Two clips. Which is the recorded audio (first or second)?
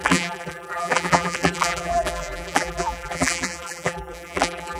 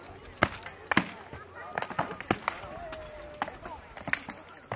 second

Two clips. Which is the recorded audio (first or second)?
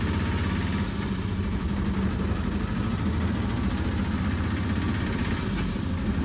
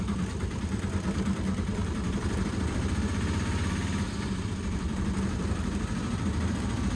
first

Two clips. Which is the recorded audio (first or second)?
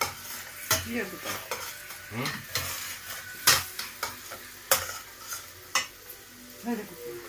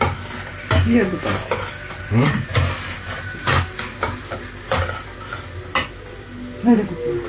first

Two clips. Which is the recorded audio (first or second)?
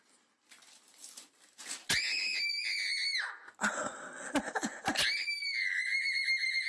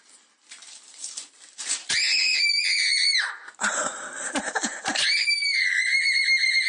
first